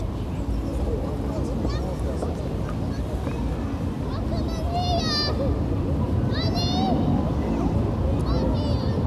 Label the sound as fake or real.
real